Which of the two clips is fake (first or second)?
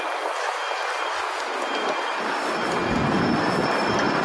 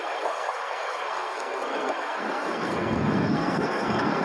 second